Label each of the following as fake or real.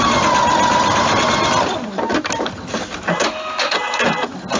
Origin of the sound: real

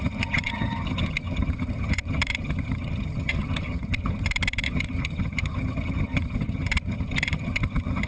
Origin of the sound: fake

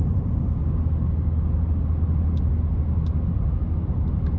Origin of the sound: real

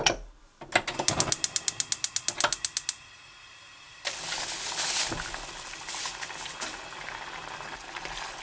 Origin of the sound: real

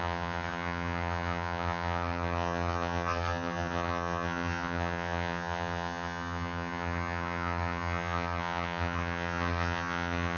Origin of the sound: fake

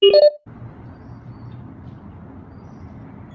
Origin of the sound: real